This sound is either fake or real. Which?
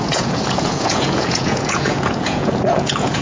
fake